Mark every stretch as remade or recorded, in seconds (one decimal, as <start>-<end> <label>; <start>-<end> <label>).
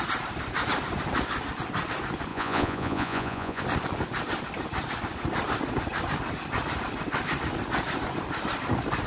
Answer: 0.0-2.3 recorded; 2.3-3.6 remade; 3.6-9.1 recorded